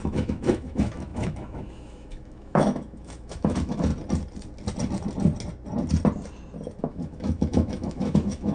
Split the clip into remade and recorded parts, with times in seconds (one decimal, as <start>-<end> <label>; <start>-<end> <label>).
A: 0.0-3.9 remade; 3.9-6.8 recorded; 6.8-8.5 remade